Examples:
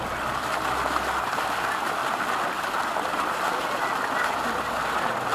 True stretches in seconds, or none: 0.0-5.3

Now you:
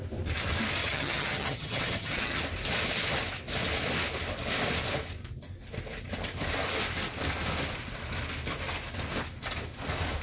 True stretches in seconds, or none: 0.0-0.8; 2.4-10.2